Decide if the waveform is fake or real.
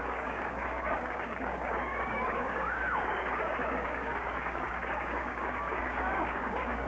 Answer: fake